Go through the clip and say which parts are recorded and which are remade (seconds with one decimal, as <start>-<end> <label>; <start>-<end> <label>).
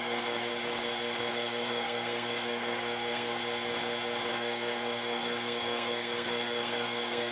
0.0-0.5 remade; 0.5-1.3 recorded; 1.3-3.4 remade; 3.4-4.3 recorded; 4.3-7.3 remade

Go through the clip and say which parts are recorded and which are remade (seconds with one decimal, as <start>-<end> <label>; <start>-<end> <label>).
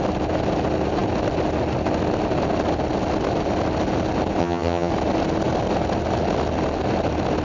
0.0-4.4 recorded; 4.4-4.9 remade; 4.9-7.4 recorded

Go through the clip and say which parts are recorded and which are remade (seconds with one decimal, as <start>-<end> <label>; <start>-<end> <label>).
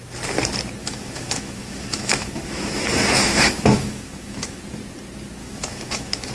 0.0-0.8 recorded; 0.8-4.6 remade; 4.6-5.4 recorded; 5.4-6.3 remade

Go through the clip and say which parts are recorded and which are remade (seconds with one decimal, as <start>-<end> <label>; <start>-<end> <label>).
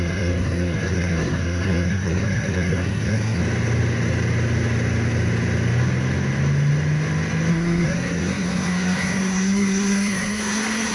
0.0-3.4 remade; 3.4-7.5 recorded; 7.5-10.9 remade